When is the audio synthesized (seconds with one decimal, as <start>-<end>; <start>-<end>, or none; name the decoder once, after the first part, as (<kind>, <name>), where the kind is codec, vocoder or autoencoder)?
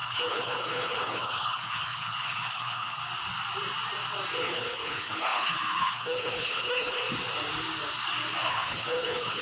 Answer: 0.0-3.0 (codec, HILCodec); 4.4-7.0; 8.5-9.4